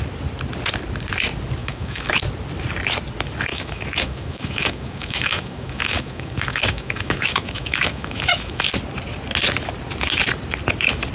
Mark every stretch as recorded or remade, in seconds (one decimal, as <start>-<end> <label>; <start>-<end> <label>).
0.0-1.6 recorded; 1.6-2.1 remade; 2.1-3.5 recorded; 3.5-8.6 remade; 8.6-11.1 recorded